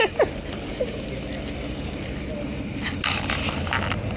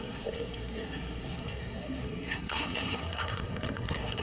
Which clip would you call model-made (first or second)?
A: second